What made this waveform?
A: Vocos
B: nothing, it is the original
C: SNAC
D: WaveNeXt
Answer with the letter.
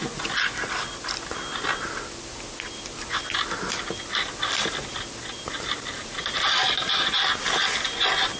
B